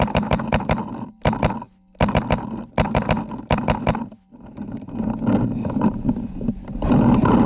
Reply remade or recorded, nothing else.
recorded